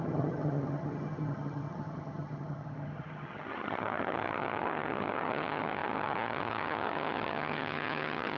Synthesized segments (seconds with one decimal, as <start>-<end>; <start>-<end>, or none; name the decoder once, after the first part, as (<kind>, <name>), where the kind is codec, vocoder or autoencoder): 0.0-8.4 (vocoder, HiFi-GAN)